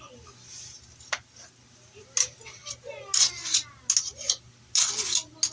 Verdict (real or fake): real